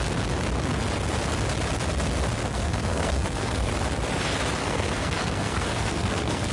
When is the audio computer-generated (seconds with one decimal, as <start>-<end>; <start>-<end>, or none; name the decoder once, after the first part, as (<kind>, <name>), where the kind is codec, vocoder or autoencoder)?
2.4-3.7 (codec, SNAC); 4.6-6.5